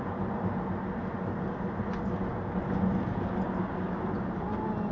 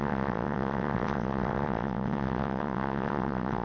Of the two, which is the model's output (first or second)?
second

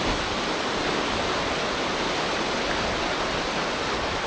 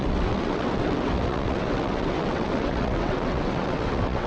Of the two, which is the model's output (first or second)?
second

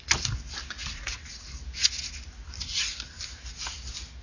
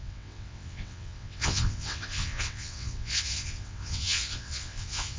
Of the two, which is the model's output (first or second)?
second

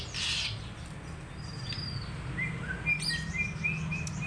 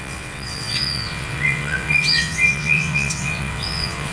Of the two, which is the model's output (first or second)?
second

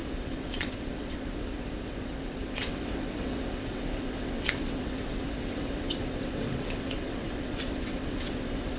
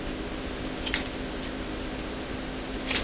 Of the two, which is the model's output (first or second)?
first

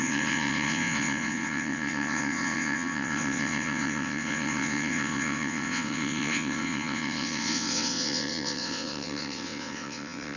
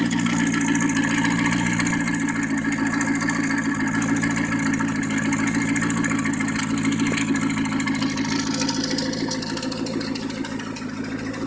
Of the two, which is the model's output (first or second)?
first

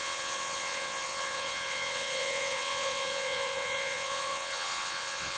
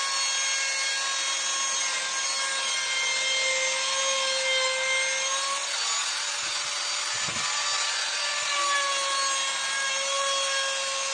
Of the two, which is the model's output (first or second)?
first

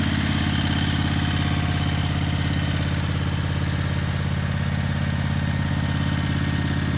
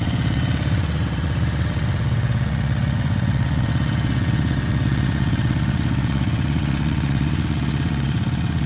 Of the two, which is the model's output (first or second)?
second